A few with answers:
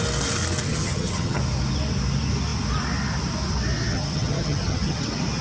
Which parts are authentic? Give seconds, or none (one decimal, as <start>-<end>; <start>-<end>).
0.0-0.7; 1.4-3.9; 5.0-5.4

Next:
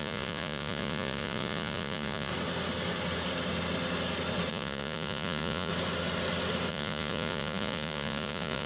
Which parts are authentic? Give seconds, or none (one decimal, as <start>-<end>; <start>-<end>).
2.3-4.5; 5.7-6.7

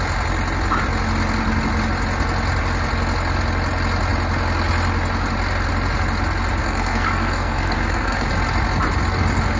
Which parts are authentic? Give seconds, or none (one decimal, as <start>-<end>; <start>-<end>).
0.0-6.6; 8.3-9.6

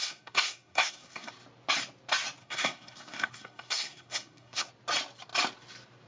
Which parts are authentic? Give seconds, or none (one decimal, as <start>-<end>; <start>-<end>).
1.3-2.4; 4.7-6.1

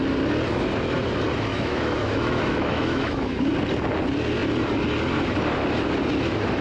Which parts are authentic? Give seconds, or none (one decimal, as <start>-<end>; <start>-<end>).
0.0-1.5; 3.5-6.6